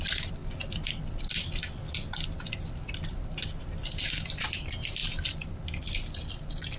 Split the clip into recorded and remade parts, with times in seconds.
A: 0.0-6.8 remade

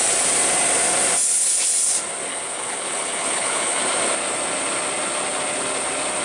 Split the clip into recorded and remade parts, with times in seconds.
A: 0.0-2.3 recorded; 2.3-3.8 remade; 3.8-6.2 recorded

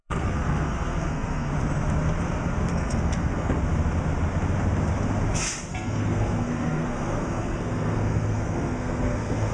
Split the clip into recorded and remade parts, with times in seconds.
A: 0.0-1.5 remade; 1.5-2.7 recorded; 2.7-3.6 remade; 3.6-5.7 recorded; 5.7-9.5 remade

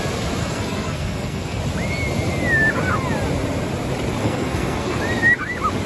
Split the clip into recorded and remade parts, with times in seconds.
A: 0.0-0.4 recorded; 0.4-1.6 remade; 1.6-4.2 recorded; 4.2-5.0 remade; 5.0-5.9 recorded